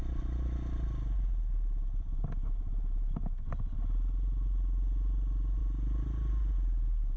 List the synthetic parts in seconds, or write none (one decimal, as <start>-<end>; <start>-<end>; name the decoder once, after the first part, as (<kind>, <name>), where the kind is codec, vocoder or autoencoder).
none